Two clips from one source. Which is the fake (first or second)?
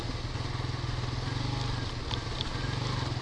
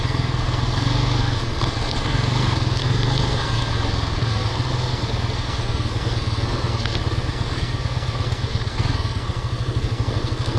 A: second